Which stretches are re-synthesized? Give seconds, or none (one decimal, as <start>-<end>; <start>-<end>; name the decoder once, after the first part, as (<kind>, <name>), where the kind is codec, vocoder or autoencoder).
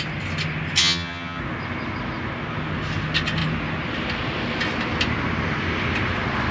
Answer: 0.8-1.4 (vocoder, HiFi-GAN)